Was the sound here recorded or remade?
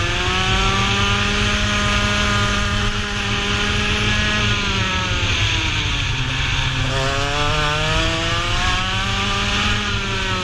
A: recorded